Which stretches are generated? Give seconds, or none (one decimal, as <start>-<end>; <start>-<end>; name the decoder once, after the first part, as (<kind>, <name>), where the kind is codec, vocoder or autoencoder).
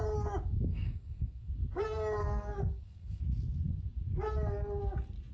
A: 0.7-1.5 (codec, SNAC); 2.2-3.2